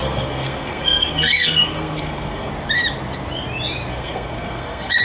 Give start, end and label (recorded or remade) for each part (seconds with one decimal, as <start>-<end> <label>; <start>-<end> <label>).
0.0-2.5 remade; 2.5-3.9 recorded; 3.9-5.0 remade